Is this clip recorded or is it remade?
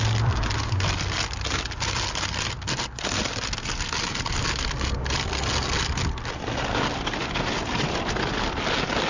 recorded